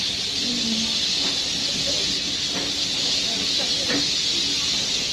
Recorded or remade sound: recorded